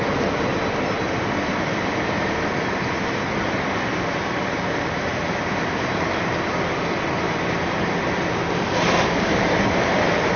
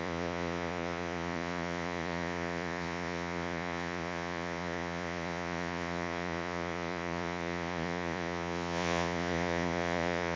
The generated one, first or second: second